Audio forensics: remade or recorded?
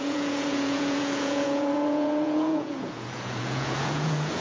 remade